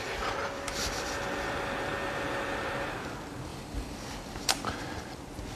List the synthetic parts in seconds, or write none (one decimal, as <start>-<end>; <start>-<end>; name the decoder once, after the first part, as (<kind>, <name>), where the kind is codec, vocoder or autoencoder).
0.0-5.6 (vocoder, BigVGAN v2)